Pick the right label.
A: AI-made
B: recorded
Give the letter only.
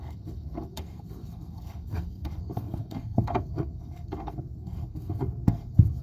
A